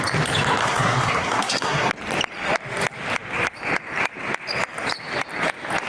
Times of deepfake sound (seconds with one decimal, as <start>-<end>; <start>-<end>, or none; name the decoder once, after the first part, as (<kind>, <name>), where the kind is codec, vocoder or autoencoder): 0.6-1.9 (codec, SNAC)

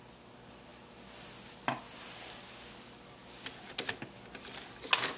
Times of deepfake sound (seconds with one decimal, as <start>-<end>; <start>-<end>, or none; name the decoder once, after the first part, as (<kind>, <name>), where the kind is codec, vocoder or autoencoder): none

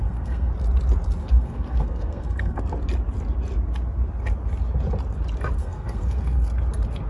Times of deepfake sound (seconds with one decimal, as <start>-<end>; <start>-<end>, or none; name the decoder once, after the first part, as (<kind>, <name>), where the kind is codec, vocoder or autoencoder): 0.0-0.5 (codec, SNAC); 1.2-2.6; 5.6-6.5

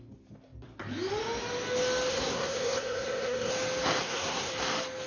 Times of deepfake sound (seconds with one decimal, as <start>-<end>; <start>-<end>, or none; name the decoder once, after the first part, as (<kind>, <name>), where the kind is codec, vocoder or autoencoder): 2.1-3.5 (codec, SNAC); 4.0-4.5